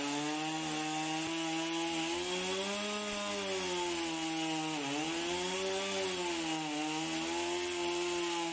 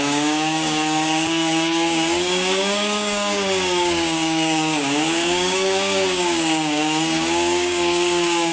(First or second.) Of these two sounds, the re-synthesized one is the second